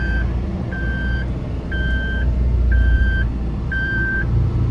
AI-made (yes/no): yes